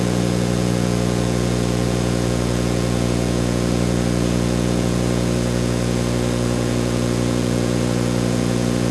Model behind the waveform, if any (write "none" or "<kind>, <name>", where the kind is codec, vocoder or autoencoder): vocoder, Vocos